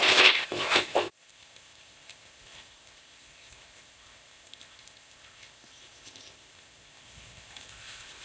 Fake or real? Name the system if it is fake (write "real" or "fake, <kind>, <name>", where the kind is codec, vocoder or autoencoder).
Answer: fake, codec, ZipCodec